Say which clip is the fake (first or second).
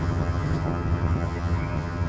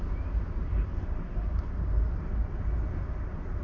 first